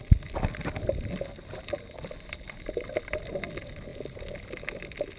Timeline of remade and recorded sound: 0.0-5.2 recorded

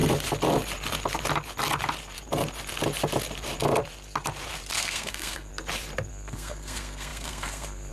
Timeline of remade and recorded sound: 0.0-4.7 recorded; 4.7-5.5 remade; 5.5-6.1 recorded; 6.1-7.9 remade

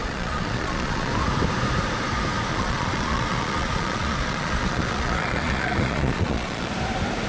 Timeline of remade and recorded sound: 0.0-1.1 remade; 1.1-2.5 recorded; 2.5-6.7 remade; 6.7-7.3 recorded